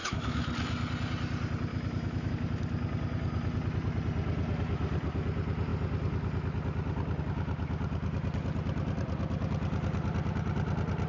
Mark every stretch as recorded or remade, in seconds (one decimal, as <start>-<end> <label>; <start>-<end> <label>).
0.0-0.5 remade; 0.5-1.7 recorded; 1.7-2.3 remade; 2.3-11.1 recorded